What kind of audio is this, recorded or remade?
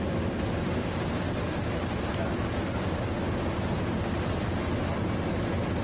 recorded